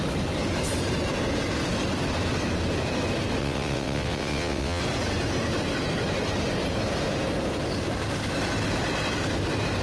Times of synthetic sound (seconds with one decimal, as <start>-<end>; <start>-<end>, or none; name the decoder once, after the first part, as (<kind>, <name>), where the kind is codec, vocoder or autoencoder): 3.4-4.8 (vocoder, WaveNeXt)